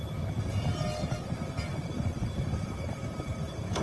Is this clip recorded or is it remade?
recorded